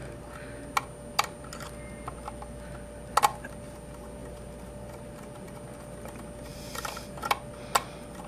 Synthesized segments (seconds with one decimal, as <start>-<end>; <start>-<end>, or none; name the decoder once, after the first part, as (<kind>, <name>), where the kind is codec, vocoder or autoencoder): none